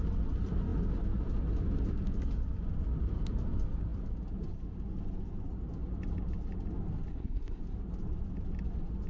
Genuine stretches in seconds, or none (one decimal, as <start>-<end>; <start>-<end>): 0.0-7.1; 7.6-9.1